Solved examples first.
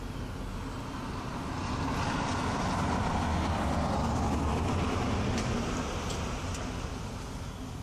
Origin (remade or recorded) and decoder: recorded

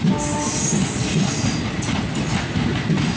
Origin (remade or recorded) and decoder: recorded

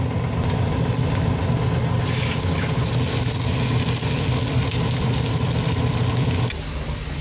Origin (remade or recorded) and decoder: recorded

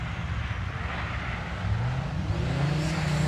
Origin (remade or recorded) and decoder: recorded